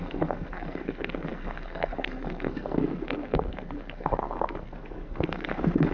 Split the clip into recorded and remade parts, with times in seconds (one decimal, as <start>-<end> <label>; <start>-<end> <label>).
0.0-5.9 remade